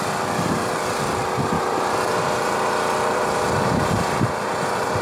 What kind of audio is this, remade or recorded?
remade